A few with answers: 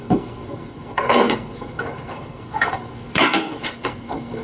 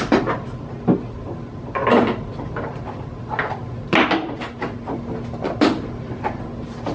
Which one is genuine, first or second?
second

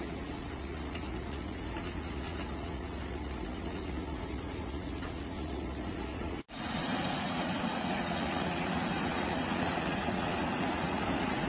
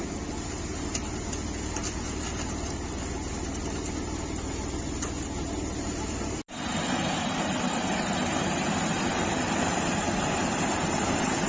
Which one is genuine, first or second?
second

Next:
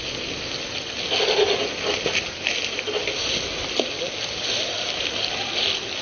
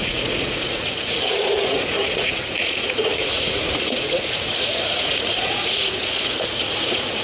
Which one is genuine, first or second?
first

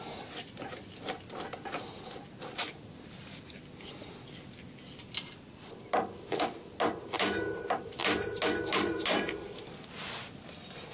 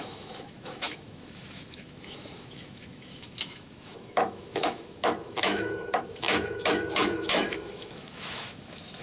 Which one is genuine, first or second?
first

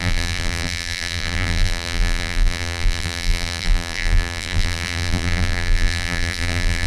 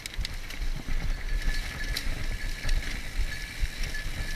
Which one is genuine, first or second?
second